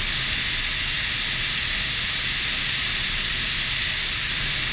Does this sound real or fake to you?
real